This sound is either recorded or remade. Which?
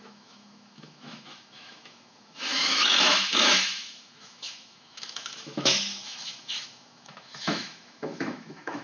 remade